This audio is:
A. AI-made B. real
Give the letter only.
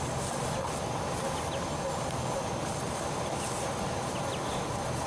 B